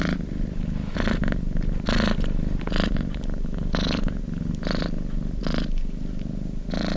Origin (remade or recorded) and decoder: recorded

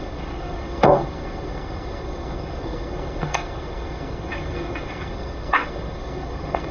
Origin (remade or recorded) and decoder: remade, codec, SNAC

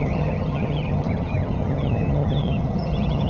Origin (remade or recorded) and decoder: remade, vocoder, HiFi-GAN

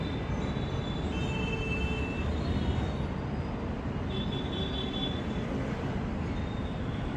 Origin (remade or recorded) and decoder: remade, vocoder, BigVGAN v2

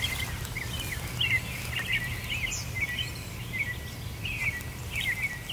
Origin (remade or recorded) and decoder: recorded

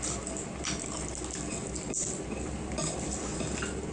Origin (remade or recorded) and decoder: recorded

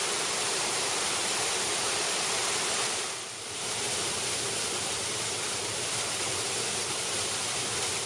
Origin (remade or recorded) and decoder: recorded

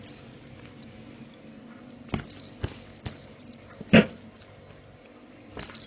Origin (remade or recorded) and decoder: recorded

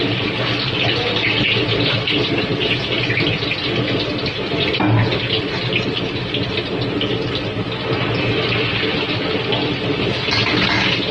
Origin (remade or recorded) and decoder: recorded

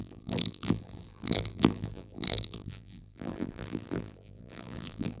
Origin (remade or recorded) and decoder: remade, vocoder, BigVGAN v2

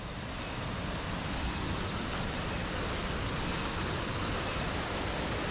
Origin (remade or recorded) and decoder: recorded